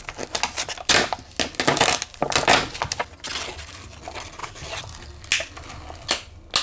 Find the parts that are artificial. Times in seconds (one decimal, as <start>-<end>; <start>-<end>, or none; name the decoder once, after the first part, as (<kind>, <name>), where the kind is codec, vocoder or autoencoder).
none